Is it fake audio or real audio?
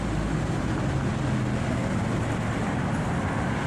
real